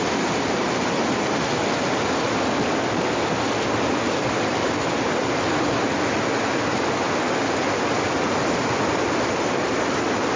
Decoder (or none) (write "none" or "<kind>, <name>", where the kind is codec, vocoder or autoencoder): none